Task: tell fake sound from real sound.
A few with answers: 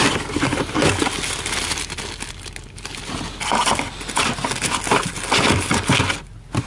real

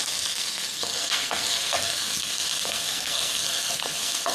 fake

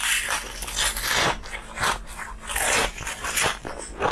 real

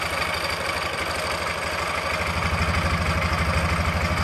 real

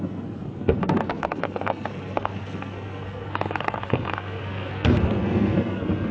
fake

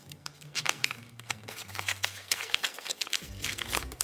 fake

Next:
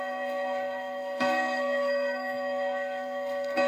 fake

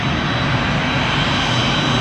real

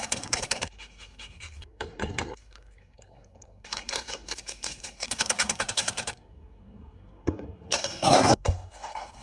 fake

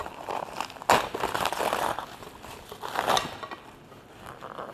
real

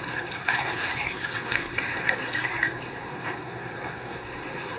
fake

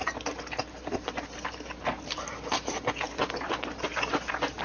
real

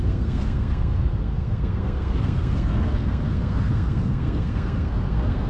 fake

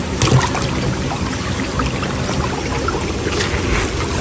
real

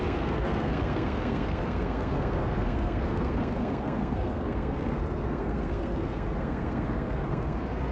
fake